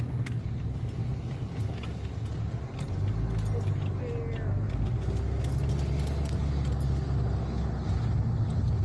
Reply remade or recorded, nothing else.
recorded